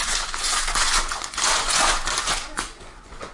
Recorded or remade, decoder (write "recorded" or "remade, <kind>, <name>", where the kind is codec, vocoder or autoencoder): remade, vocoder, Vocos